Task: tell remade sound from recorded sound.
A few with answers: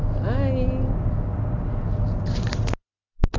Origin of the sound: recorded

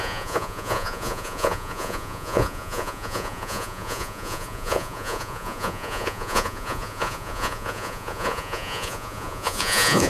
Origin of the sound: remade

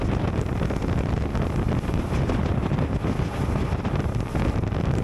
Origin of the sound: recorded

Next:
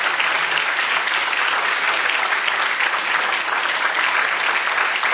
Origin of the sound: recorded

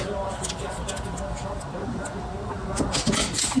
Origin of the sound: recorded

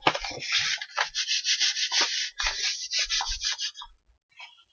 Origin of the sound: recorded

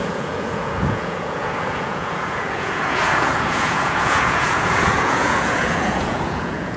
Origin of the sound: remade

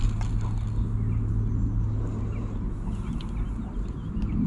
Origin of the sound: recorded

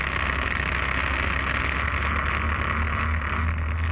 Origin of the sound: recorded